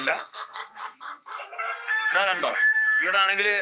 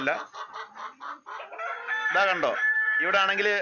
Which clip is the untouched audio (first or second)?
second